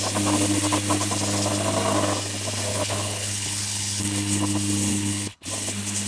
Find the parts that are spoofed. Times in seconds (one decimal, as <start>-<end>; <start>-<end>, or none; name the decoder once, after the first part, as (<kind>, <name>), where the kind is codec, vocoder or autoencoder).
2.7-4.0 (codec, HILCodec); 4.9-5.4